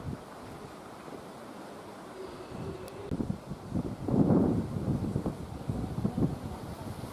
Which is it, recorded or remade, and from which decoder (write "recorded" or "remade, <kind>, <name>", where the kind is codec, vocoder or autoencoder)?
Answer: recorded